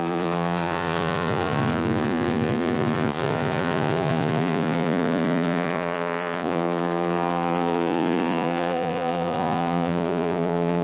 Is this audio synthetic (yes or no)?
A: yes